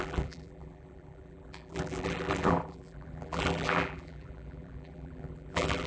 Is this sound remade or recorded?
remade